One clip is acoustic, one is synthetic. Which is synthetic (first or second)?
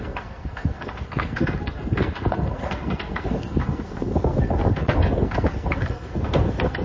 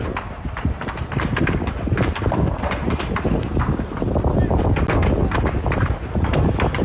first